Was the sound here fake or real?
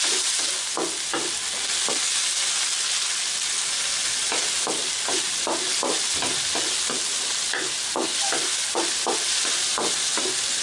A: real